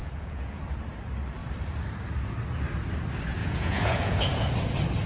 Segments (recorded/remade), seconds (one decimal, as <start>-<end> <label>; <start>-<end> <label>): 0.0-0.6 remade; 0.6-3.4 recorded; 3.4-4.5 remade; 4.5-5.1 recorded